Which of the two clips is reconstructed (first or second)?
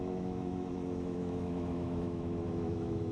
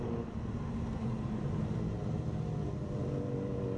first